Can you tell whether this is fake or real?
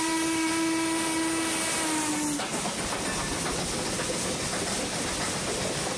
real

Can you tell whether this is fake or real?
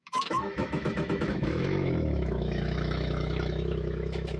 fake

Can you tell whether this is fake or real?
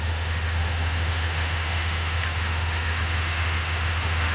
fake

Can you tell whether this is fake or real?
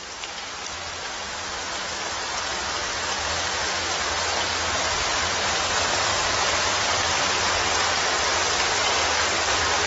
real